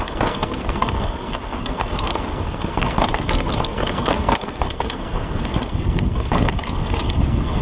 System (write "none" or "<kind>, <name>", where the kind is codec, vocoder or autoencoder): codec, SNAC